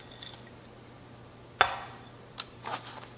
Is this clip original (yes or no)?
yes